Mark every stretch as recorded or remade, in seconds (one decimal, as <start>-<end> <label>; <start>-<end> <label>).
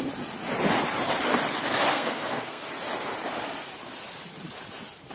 0.0-1.9 recorded; 1.9-2.7 remade; 2.7-5.1 recorded